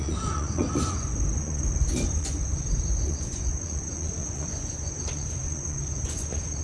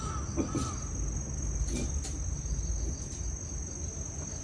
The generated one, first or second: first